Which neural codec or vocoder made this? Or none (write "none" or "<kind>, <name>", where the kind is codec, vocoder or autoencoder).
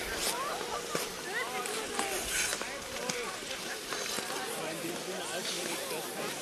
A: none